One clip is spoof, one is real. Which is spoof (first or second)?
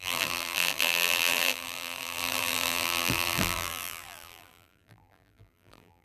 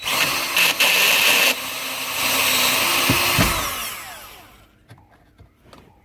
first